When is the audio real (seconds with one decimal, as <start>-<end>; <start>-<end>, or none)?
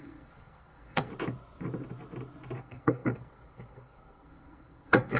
1.1-2.6